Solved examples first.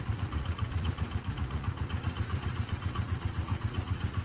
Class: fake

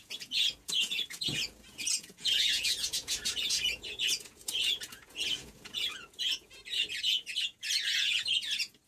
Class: fake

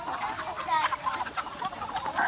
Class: real